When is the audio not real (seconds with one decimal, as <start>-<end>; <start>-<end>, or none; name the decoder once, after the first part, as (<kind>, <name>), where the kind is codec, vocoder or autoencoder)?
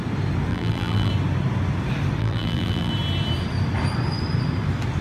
0.5-1.1 (vocoder, BigVGAN v2); 2.2-2.9